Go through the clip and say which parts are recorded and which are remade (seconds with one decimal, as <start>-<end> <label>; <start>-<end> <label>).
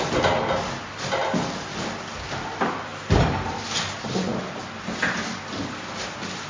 0.0-6.5 recorded